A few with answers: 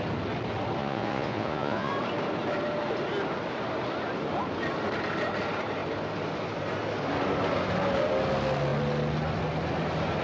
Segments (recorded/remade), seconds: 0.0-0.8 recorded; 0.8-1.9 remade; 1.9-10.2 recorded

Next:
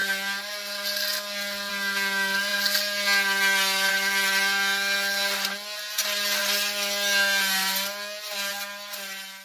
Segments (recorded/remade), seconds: 0.0-9.4 recorded

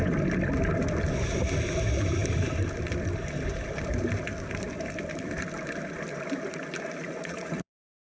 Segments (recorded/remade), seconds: 0.0-7.0 recorded; 7.0-8.2 remade

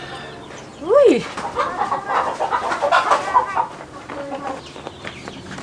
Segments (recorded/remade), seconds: 0.0-5.6 recorded

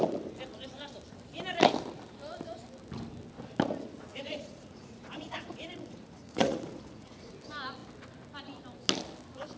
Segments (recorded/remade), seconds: 0.0-4.1 recorded; 4.1-7.3 remade; 7.3-9.6 recorded

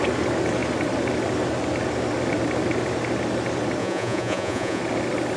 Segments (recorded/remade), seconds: 0.0-3.8 recorded; 3.8-4.8 remade; 4.8-5.4 recorded